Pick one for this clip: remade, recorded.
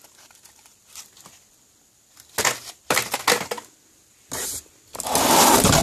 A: recorded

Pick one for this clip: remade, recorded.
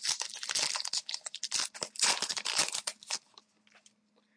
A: recorded